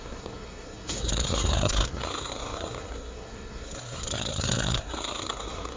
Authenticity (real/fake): fake